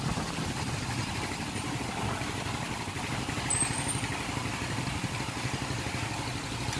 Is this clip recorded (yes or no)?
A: yes